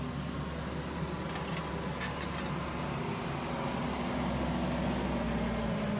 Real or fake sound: real